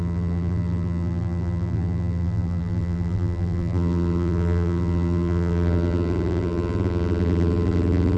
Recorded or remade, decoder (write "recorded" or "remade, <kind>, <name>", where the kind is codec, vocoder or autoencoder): remade, vocoder, BigVGAN v2